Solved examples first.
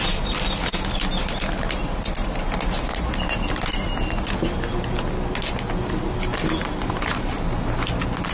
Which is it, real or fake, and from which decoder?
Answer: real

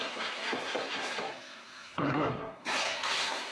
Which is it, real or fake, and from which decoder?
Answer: fake, codec, SNAC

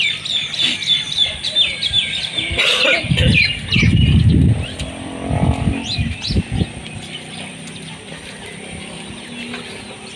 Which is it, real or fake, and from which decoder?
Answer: real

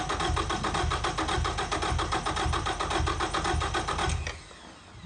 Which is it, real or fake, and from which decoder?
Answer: real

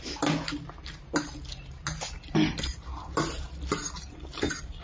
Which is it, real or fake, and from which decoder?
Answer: real